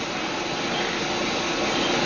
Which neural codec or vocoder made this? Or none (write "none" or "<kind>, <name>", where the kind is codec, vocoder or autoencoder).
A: none